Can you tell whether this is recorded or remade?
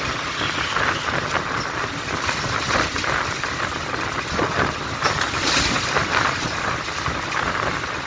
recorded